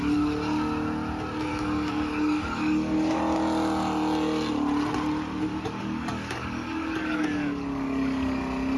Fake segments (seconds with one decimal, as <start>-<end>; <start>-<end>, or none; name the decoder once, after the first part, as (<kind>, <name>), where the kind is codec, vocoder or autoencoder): 1.5-3.2 (codec, DAC); 5.5-8.4